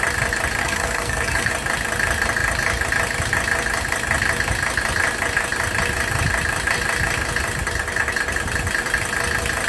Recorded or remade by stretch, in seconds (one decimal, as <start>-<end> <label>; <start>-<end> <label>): 0.0-0.6 recorded; 0.6-1.5 remade; 1.5-9.7 recorded